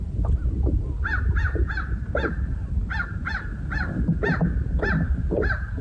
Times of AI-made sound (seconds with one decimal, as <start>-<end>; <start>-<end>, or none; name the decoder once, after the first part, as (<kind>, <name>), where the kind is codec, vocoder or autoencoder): none